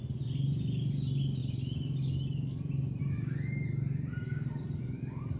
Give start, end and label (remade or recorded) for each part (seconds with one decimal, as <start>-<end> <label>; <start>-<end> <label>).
0.0-5.4 recorded